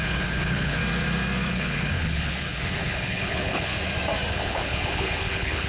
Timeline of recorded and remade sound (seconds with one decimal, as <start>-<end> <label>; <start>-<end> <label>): 0.0-0.8 remade; 0.8-1.5 recorded; 1.5-3.7 remade; 3.7-4.3 recorded; 4.3-5.7 remade